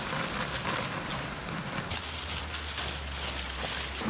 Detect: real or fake real